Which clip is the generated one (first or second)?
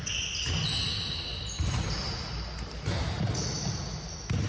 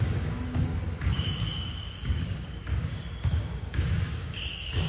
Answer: second